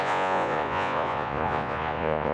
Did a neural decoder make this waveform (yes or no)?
yes